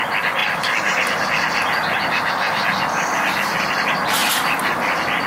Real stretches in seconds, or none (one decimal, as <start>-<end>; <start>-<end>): 0.0-5.3